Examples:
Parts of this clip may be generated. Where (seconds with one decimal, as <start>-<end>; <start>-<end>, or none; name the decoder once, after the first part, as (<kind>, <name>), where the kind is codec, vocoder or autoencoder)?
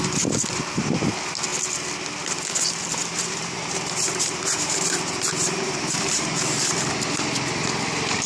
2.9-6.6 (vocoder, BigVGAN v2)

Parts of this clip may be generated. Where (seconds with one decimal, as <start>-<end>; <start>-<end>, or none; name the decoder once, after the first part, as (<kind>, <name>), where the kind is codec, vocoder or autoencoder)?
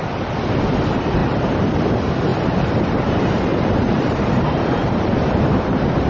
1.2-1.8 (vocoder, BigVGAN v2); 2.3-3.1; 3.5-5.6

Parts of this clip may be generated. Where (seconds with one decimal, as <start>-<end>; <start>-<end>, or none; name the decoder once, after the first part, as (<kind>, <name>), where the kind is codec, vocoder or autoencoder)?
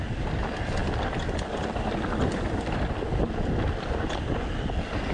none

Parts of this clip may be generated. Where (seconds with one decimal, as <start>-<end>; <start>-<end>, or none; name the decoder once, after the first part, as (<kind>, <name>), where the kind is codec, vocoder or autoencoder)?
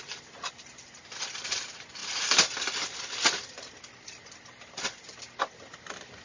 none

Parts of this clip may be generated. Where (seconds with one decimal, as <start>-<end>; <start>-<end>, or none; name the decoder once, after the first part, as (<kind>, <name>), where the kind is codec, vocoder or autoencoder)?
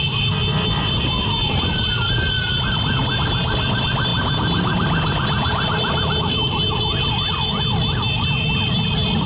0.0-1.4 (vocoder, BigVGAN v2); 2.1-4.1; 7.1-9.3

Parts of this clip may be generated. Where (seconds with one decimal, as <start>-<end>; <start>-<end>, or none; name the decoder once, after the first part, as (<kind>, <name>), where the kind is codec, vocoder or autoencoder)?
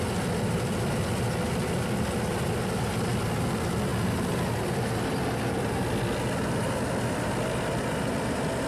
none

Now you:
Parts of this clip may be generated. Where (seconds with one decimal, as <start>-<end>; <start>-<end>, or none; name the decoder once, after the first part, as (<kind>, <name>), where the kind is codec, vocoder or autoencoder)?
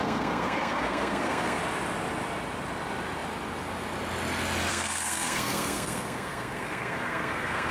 0.0-1.6 (codec, SNAC); 4.7-7.7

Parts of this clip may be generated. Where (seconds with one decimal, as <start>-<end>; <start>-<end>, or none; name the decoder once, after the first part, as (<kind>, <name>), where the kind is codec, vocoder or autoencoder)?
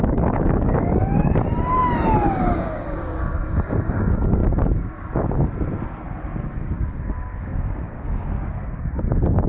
0.0-4.4 (codec, DAC); 6.5-9.5